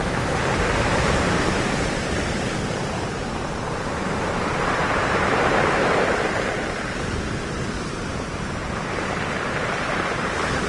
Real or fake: fake